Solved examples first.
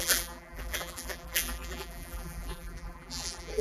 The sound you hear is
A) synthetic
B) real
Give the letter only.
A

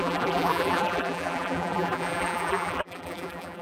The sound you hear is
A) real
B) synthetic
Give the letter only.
B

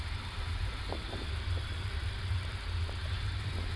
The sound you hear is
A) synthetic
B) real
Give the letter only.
A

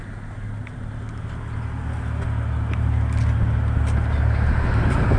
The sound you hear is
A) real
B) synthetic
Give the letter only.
A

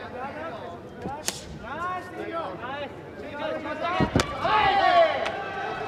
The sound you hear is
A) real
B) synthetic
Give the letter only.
A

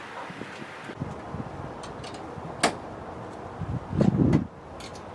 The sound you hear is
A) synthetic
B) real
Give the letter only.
B